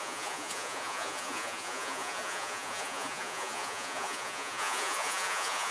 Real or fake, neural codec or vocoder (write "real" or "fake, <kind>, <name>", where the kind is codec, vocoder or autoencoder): fake, vocoder, Vocos